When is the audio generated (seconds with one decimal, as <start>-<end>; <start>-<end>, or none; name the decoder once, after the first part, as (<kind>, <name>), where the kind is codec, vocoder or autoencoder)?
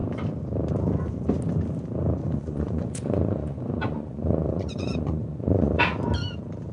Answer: 2.2-5.8 (vocoder, Vocos)